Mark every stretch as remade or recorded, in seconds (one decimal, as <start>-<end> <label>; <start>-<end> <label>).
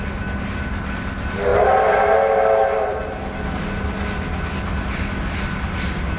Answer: 0.0-6.2 recorded